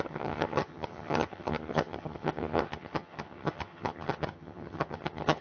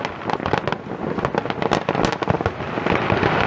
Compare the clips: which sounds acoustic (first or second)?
second